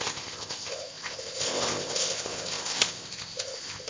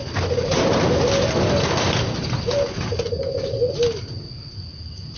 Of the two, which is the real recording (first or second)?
second